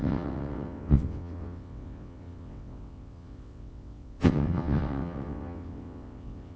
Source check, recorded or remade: remade